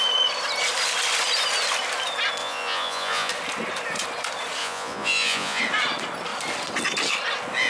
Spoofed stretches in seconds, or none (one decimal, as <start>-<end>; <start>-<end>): 2.4-3.3; 4.6-5.6